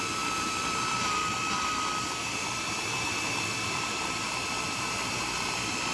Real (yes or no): no